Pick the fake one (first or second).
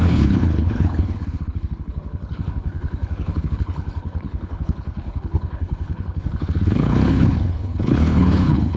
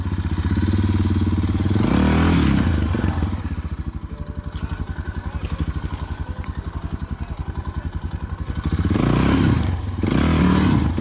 first